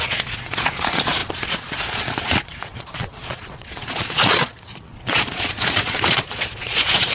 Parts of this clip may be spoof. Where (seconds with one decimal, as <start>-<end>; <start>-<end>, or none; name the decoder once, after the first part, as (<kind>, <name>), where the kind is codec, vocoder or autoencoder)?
0.0-7.1 (vocoder, Vocos)